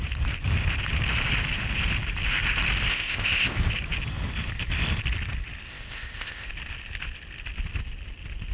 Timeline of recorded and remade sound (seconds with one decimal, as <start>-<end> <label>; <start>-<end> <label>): 0.0-2.9 recorded; 2.9-3.7 remade; 3.7-5.7 recorded; 5.7-6.5 remade; 6.5-8.5 recorded